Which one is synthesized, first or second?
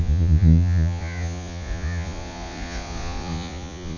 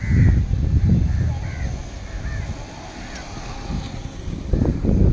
first